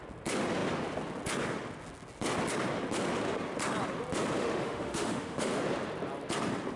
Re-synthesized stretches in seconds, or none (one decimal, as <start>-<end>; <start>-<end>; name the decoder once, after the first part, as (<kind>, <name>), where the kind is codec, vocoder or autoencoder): 4.4-5.6 (autoencoder, DAC-VAE)